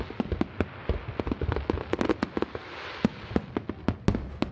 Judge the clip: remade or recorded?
recorded